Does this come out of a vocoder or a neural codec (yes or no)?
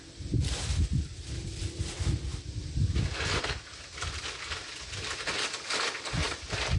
no